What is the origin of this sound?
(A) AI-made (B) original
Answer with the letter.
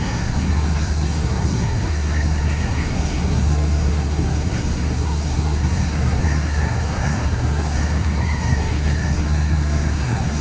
A